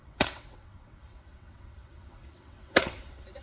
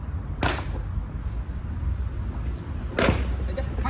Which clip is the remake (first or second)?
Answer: first